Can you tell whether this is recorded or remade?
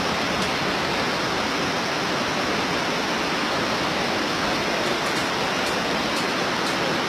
recorded